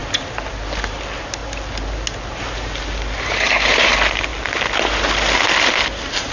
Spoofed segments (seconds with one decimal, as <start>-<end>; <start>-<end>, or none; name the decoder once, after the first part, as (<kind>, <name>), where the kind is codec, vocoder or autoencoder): 0.9-1.4 (vocoder, BigVGAN v2); 3.2-4.3